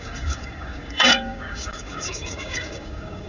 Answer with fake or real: fake